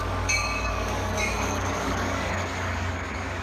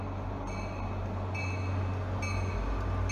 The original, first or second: second